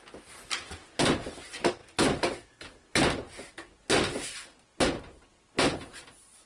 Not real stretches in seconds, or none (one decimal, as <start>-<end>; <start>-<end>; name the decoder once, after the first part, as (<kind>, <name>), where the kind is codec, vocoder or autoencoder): none